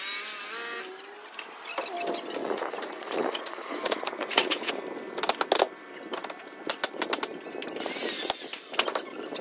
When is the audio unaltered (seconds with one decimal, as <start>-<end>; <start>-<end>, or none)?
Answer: 0.0-2.4; 4.7-9.4